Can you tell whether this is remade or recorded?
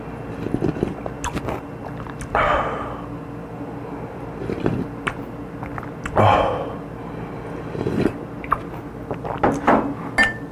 recorded